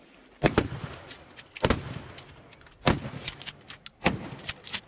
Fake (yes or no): no